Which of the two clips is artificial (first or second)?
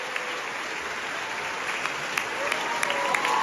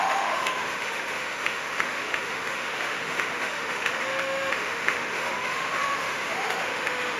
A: second